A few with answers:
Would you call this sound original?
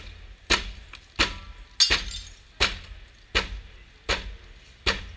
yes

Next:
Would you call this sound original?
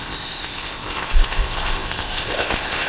no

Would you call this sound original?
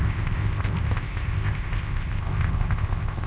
no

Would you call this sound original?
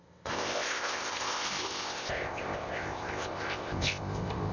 no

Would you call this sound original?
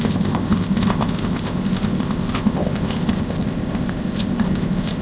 no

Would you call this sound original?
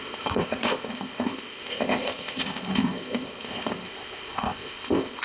no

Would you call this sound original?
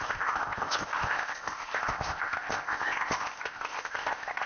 no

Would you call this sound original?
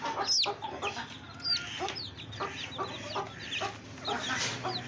yes